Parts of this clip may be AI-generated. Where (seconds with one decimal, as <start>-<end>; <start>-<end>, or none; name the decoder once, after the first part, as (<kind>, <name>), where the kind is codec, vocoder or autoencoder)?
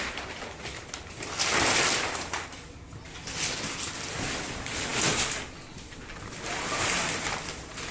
none